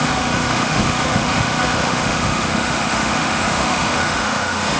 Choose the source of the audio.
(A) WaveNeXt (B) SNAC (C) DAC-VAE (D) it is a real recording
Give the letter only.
C